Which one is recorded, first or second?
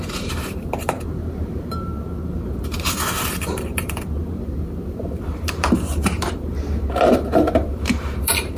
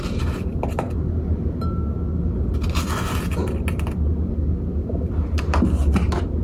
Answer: second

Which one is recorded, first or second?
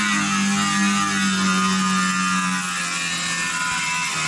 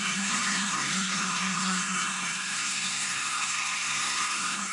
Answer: first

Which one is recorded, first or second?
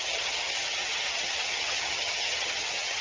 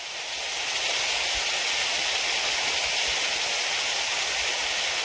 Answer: second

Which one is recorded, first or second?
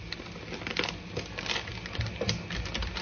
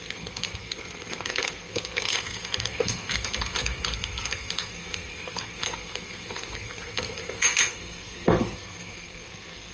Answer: first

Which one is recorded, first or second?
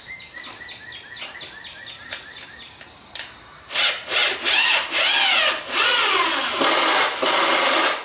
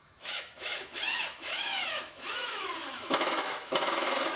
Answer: first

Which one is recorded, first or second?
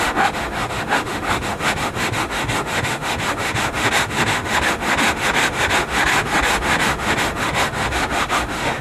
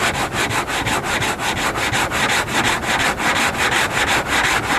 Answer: second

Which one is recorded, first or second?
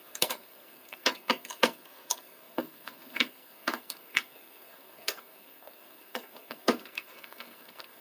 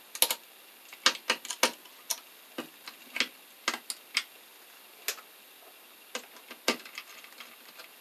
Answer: second